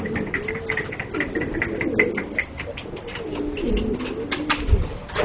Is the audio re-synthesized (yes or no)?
no